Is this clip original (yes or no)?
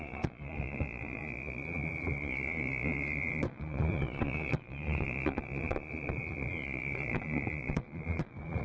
no